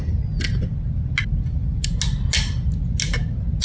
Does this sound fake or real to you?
real